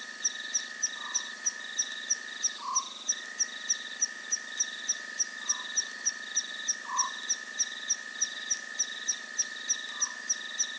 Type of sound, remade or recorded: recorded